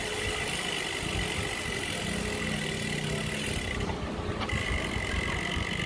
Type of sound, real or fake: real